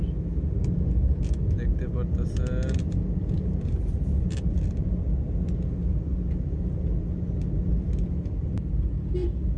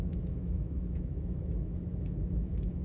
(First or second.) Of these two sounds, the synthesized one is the second